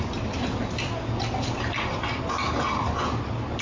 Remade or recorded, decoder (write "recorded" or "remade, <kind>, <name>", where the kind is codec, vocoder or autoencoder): recorded